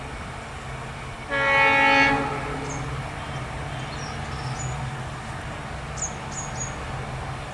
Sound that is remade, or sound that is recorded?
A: recorded